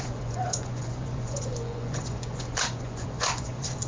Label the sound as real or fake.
fake